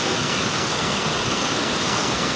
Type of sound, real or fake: fake